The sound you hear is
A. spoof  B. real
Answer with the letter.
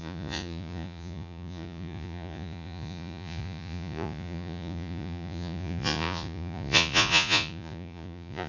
A